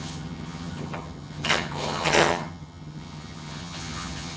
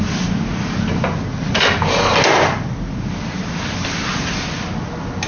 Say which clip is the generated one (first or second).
first